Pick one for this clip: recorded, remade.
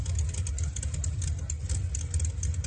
recorded